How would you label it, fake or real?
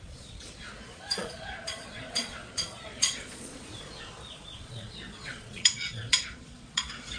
fake